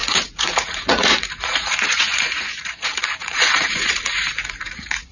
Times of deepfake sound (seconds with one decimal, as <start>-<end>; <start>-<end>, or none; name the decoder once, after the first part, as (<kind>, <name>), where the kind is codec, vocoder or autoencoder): 0.0-5.1 (vocoder, Vocos)